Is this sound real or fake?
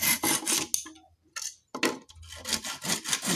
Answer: real